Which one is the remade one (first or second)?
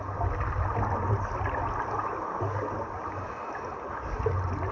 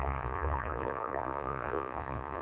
second